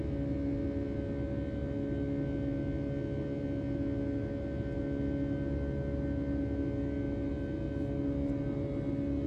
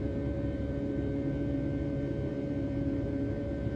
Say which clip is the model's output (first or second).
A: second